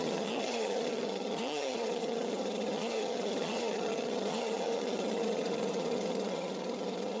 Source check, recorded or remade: remade